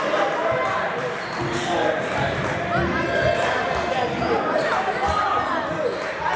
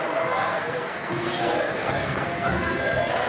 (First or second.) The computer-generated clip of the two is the second